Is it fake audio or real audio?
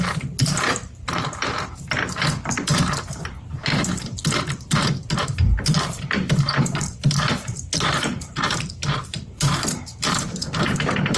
fake